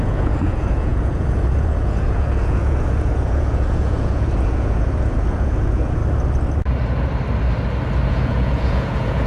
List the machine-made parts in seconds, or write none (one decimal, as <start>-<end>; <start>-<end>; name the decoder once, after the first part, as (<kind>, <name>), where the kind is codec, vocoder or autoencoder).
0.0-6.0 (vocoder, Vocos); 8.1-9.3